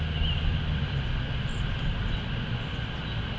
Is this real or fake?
real